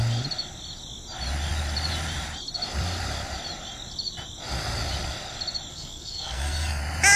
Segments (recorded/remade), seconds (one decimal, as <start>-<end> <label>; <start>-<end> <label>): 0.0-5.7 recorded; 5.7-6.8 remade; 6.8-7.2 recorded